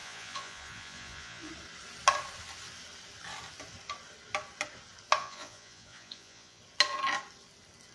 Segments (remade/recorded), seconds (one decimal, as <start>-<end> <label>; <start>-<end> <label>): 0.0-1.5 remade; 1.5-5.2 recorded; 5.2-6.6 remade; 6.6-7.9 recorded